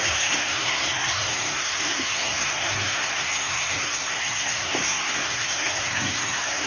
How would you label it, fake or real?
fake